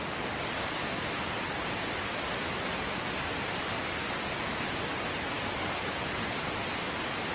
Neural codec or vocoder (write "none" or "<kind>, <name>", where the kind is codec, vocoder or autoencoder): none